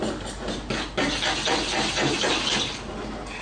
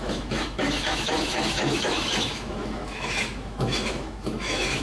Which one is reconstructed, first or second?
second